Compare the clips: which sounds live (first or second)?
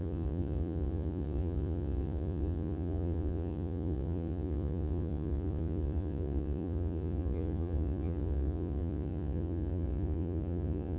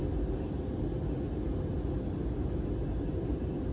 second